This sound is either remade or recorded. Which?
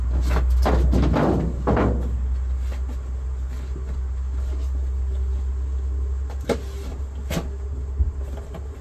recorded